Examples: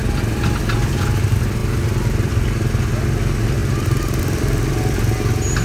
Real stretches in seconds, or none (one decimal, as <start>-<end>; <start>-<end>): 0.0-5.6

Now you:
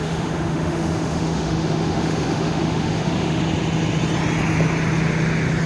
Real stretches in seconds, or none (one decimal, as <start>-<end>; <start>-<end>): 3.4-5.7

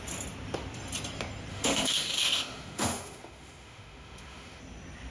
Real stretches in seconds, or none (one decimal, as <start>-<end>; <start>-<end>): 0.0-1.5; 4.6-5.1